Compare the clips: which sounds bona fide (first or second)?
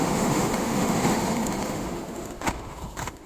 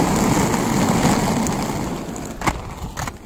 second